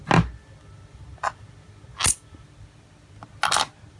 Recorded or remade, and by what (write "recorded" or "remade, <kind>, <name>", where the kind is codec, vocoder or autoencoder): recorded